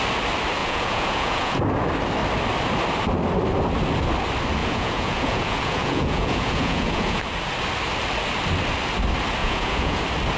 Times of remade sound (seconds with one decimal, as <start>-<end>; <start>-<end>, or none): 0.6-1.6; 4.6-7.2; 9.4-10.0